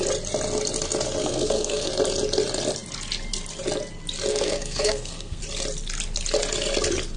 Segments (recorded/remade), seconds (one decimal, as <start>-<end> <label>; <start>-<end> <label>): 0.0-1.2 recorded; 1.2-1.9 remade; 1.9-4.3 recorded; 4.3-5.4 remade; 5.4-7.2 recorded